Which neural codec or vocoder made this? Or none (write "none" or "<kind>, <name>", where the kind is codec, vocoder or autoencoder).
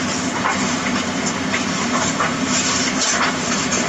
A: none